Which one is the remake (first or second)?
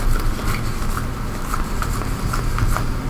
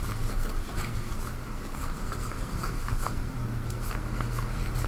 second